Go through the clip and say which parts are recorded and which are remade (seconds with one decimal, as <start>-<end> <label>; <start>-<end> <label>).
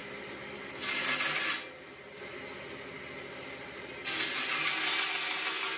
0.0-5.8 recorded